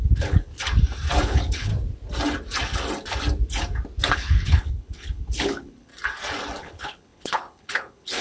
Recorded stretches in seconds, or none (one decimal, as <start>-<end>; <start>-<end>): 0.5-1.2; 1.7-4.1; 5.9-6.6